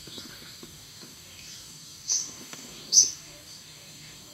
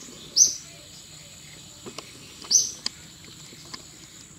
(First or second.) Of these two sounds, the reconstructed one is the first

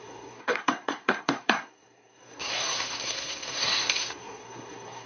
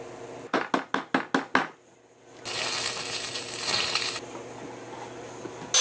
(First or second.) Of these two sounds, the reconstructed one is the first